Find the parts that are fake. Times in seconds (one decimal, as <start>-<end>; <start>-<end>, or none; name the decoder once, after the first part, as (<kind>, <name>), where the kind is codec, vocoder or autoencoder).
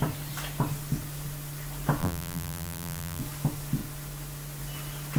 2.0-3.2 (vocoder, BigVGAN v2)